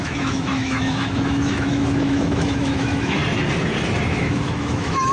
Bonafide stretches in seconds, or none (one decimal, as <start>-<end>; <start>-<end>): 3.2-4.1